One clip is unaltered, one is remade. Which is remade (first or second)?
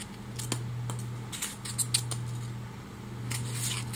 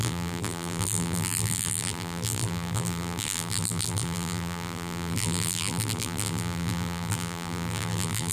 second